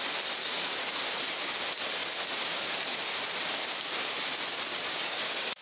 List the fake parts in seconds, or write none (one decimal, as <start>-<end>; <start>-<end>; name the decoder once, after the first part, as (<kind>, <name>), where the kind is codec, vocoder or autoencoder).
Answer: 0.4-0.9 (codec, DAC); 4.9-5.6